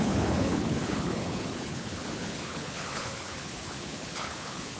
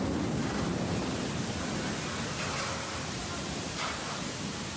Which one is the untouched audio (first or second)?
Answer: second